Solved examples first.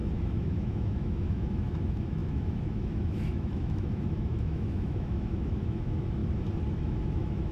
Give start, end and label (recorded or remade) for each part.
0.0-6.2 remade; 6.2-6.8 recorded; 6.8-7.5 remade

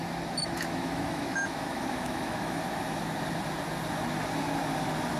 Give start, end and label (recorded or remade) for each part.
0.0-0.4 recorded; 0.4-2.6 remade; 2.6-5.2 recorded